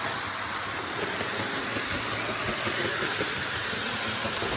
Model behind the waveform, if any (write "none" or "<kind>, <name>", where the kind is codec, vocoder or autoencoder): none